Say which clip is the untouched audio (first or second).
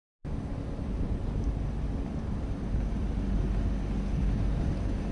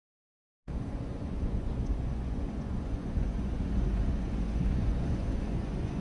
first